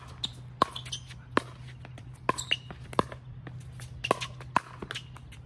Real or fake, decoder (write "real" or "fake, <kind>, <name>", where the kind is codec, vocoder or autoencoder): real